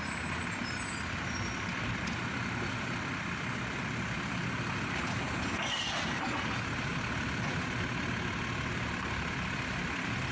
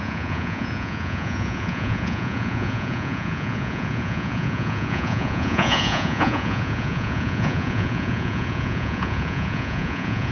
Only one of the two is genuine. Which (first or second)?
first